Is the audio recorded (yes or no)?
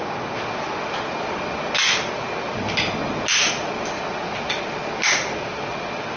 yes